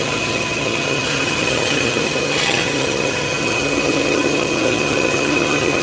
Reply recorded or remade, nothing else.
remade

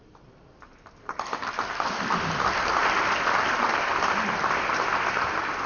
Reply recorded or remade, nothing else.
recorded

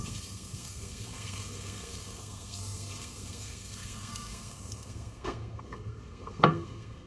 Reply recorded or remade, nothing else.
remade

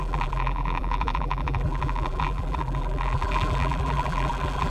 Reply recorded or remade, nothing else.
remade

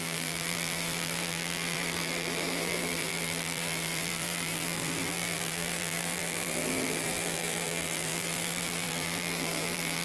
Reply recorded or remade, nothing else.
remade